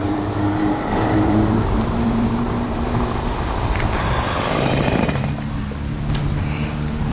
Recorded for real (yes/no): no